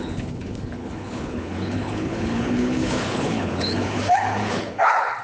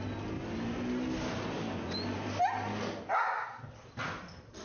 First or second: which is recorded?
second